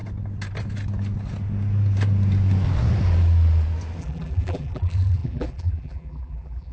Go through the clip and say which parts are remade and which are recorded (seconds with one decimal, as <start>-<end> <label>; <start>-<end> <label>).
0.0-4.0 recorded; 4.0-6.7 remade